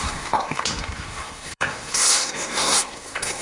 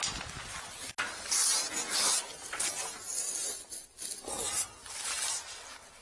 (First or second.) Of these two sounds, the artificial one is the first